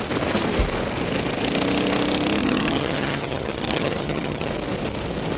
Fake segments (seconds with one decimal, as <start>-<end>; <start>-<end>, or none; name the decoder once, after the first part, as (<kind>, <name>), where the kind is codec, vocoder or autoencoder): 2.4-4.5 (vocoder, HiFi-GAN)